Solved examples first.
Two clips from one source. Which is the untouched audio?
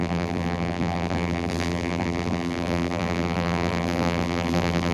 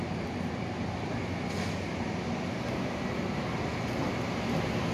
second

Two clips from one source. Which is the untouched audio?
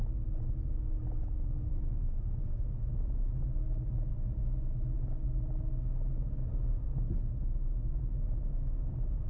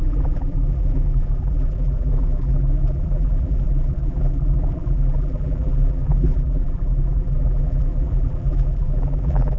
first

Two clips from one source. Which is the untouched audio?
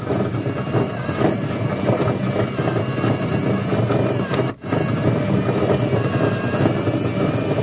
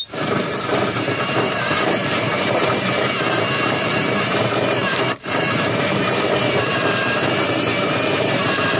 first